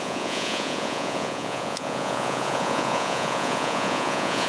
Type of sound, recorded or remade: remade